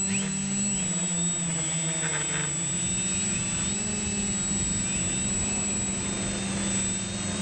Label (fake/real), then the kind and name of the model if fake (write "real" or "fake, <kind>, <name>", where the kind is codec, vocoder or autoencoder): real